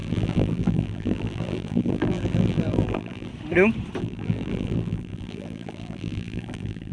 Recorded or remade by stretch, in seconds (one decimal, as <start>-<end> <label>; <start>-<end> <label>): 0.0-3.3 remade; 3.3-4.0 recorded; 4.0-6.9 remade